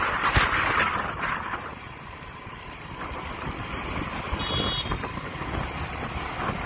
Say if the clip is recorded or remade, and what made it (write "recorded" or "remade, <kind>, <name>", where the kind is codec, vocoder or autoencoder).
recorded